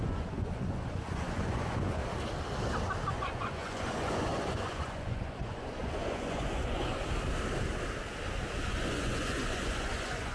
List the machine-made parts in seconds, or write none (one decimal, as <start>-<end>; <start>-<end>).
0.0-2.0; 3.1-7.0; 8.6-10.3